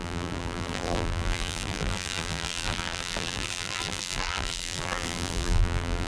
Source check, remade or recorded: remade